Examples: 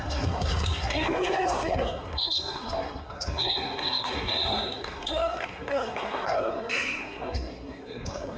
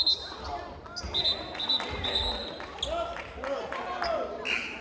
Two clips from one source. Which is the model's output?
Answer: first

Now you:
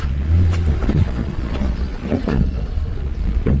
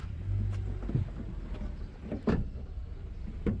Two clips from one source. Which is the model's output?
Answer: first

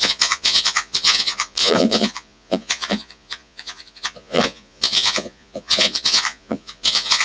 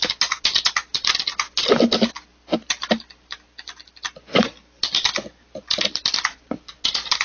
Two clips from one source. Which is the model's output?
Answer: first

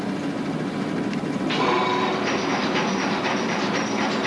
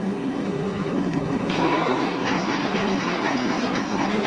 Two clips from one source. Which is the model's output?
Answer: second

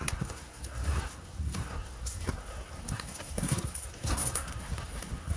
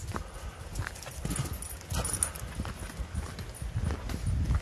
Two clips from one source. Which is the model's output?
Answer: first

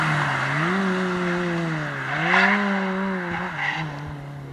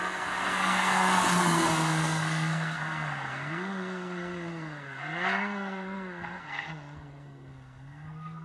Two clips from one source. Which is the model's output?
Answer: second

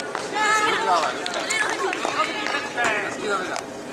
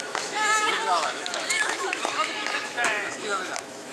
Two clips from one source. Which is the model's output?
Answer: second